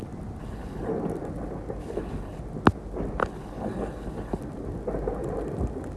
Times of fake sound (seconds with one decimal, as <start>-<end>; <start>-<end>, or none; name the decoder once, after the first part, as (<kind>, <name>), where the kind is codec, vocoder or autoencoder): 0.4-0.9 (codec, HILCodec); 1.8-2.4; 3.2-4.4